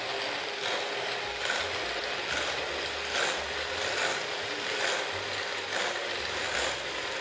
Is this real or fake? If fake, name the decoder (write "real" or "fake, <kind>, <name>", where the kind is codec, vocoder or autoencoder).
real